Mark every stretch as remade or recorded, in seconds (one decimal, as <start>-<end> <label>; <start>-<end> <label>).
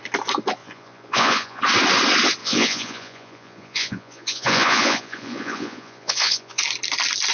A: 0.0-0.6 recorded; 0.6-1.6 remade; 1.6-2.4 recorded; 2.4-6.6 remade; 6.6-7.3 recorded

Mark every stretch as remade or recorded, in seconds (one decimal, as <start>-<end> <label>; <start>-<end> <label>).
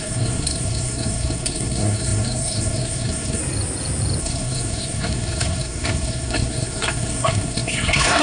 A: 0.0-3.4 remade; 3.4-4.2 recorded; 4.2-8.2 remade